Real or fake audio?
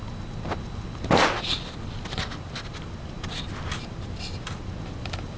real